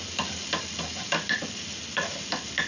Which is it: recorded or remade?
recorded